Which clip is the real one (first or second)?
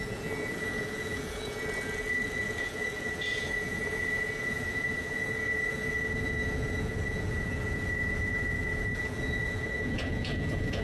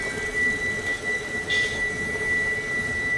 second